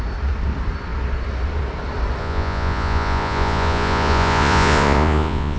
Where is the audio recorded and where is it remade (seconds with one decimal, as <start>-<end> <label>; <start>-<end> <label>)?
0.0-2.2 recorded; 2.2-5.6 remade